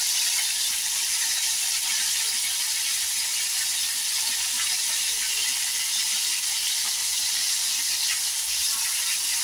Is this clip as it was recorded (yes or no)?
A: yes